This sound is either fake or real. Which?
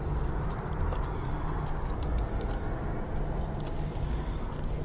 real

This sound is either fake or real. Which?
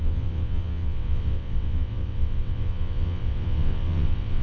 fake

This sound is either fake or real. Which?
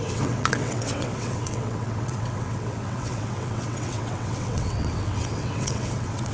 fake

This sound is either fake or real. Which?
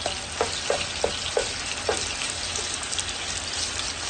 real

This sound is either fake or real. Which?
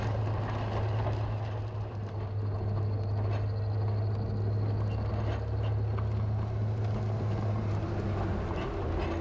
real